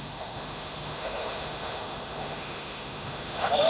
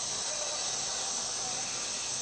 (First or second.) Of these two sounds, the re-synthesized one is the first